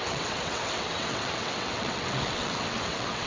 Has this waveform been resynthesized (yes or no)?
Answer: yes